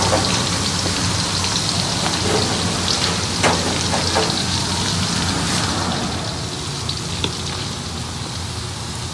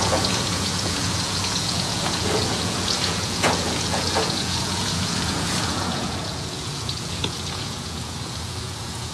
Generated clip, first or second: second